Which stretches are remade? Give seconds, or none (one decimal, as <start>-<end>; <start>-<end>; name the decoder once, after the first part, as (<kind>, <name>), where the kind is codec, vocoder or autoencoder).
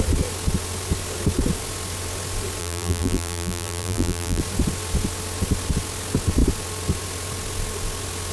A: 2.6-4.4 (vocoder, BigVGAN v2)